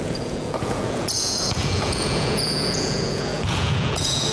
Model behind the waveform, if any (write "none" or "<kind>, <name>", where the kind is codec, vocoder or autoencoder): vocoder, Vocos